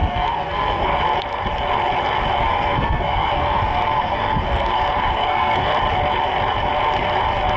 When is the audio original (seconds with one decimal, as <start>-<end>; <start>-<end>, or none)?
0.9-2.4; 5.7-7.6